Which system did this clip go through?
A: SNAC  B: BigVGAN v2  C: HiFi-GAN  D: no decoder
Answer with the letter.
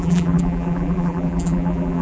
B